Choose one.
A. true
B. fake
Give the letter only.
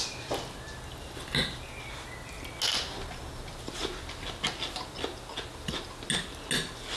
A